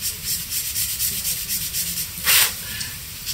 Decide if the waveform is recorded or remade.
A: remade